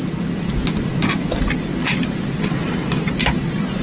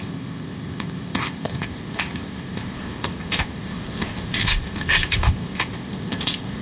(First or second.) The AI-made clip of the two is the second